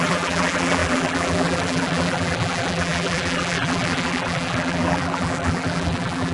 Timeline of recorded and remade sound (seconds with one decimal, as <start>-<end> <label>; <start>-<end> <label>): 0.0-6.3 remade